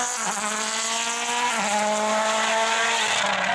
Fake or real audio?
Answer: real